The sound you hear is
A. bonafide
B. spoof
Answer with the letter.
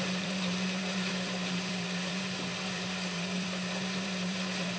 B